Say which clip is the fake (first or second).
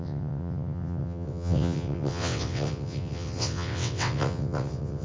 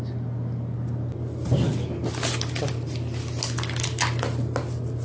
first